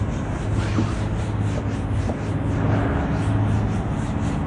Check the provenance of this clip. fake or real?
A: real